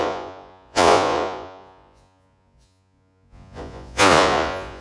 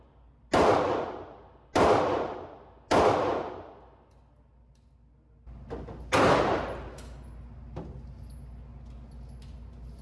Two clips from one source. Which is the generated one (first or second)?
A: first